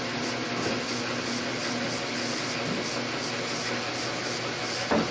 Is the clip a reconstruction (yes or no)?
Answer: no